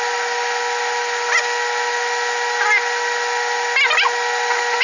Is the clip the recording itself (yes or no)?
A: yes